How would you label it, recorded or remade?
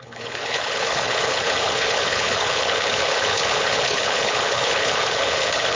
remade